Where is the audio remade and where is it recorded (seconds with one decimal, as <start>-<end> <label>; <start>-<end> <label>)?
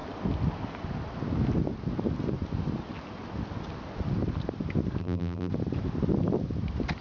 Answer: 0.0-5.0 recorded; 5.0-5.5 remade; 5.5-7.0 recorded